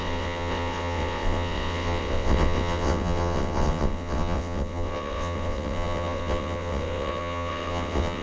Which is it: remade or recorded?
remade